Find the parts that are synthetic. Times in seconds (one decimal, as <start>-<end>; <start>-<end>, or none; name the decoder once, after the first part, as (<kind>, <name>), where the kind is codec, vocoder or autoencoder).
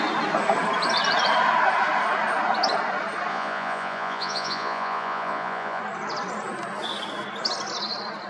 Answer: 3.3-5.8 (vocoder, Vocos)